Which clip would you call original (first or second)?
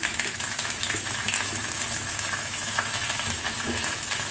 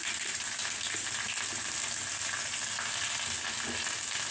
second